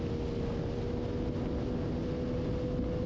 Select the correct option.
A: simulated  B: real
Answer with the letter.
B